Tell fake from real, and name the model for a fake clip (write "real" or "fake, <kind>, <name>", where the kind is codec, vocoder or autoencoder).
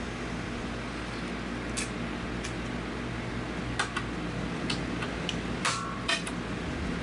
real